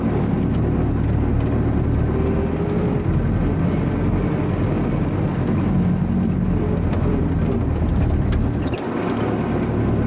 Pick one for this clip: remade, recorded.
recorded